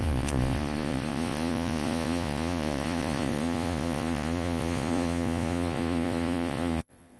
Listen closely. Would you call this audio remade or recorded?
remade